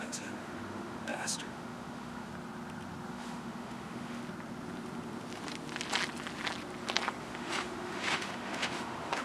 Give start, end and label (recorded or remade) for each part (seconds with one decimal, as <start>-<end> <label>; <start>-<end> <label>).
0.0-2.3 remade; 2.3-3.1 recorded; 3.1-4.2 remade; 4.2-7.2 recorded; 7.2-9.2 remade